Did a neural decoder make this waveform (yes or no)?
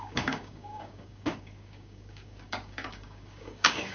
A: yes